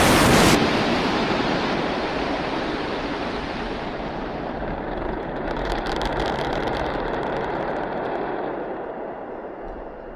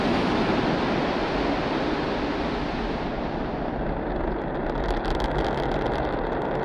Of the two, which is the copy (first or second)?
first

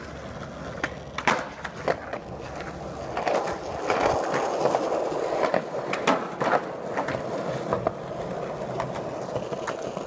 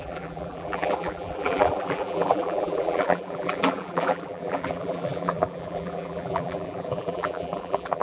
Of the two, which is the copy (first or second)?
second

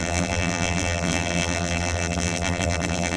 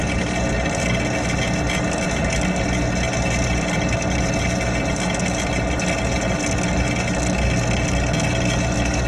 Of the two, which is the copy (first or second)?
first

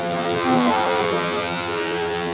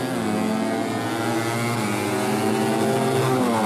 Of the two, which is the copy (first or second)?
first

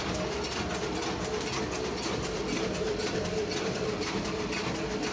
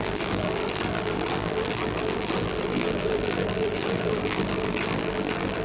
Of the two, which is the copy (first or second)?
second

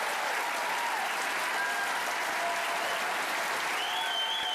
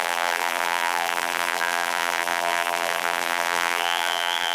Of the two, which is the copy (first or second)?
second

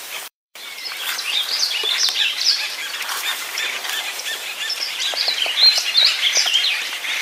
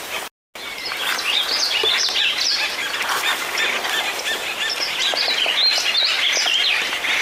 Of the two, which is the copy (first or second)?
first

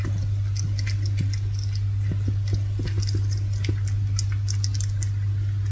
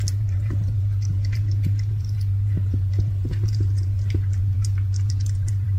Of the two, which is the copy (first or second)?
second